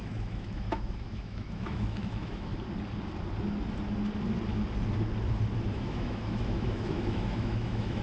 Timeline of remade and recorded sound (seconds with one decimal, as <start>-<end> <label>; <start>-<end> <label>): 0.0-2.5 remade; 2.5-5.7 recorded; 5.7-8.0 remade